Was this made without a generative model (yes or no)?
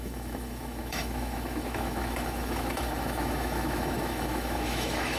no